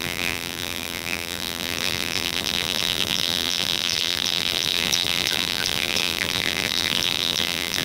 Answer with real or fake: fake